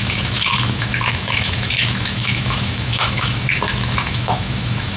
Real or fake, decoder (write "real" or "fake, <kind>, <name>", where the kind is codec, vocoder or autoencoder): fake, autoencoder, DAC-VAE